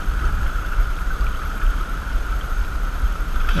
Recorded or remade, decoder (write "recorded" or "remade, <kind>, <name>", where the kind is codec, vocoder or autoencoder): remade, vocoder, BigVGAN v2